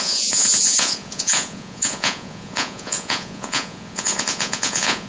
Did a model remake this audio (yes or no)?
yes